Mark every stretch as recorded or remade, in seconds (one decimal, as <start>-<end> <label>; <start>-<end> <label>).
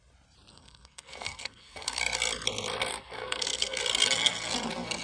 0.0-0.5 recorded; 0.5-2.0 remade; 2.0-2.9 recorded; 2.9-3.8 remade; 3.8-5.0 recorded